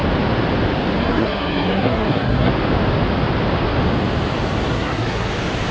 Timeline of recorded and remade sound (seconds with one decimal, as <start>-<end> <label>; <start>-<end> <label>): 0.0-1.0 recorded; 1.0-2.5 remade; 2.5-4.7 recorded; 4.7-5.3 remade; 5.3-5.7 recorded